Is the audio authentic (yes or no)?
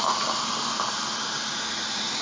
yes